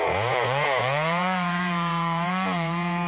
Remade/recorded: remade